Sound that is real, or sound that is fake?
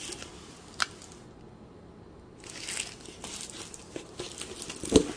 real